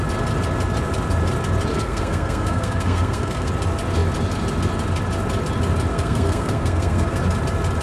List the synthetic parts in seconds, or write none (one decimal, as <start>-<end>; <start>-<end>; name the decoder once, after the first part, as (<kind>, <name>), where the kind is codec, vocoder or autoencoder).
1.7-3.5 (codec, SNAC); 5.9-7.2